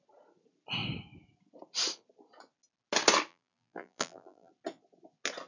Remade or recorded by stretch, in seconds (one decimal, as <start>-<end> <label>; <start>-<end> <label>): 0.0-3.3 recorded; 3.3-4.5 remade; 4.5-5.5 recorded